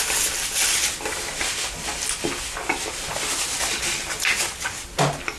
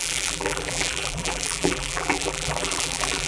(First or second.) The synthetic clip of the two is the second